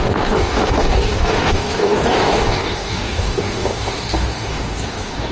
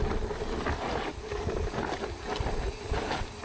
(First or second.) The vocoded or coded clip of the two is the first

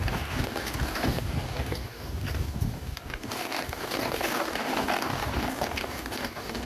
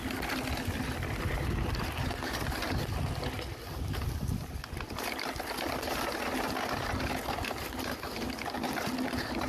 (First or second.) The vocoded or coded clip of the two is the first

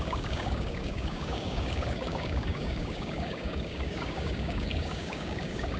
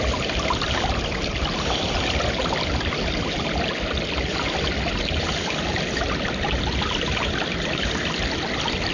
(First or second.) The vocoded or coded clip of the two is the first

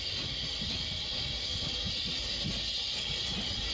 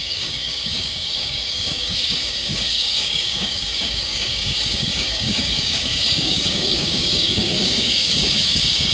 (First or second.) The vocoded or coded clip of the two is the second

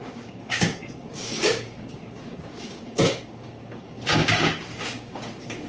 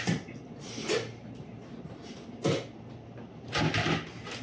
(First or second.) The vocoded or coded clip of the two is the first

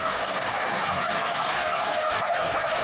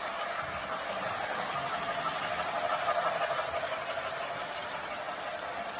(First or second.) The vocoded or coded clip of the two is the first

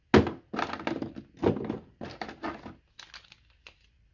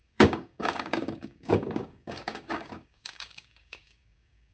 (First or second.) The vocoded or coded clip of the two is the second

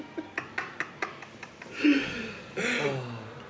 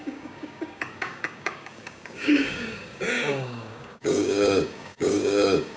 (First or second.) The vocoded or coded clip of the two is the second